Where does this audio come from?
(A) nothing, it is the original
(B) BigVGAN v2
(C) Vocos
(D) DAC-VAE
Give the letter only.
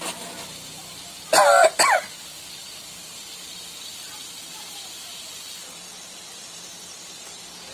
A